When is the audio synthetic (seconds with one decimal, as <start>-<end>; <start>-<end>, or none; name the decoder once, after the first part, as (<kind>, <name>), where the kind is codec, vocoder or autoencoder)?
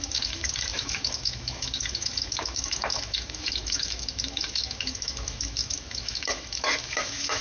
0.0-7.4 (autoencoder, DAC-VAE)